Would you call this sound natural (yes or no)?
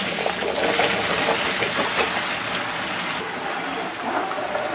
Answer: yes